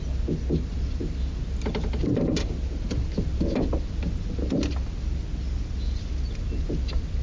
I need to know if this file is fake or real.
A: real